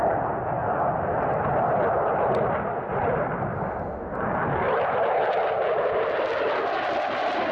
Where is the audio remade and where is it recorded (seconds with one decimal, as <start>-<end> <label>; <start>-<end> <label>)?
0.0-7.5 recorded

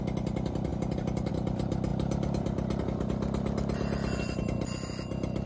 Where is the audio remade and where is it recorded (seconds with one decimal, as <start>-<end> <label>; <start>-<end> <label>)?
0.0-0.7 recorded; 0.7-1.3 remade; 1.3-5.5 recorded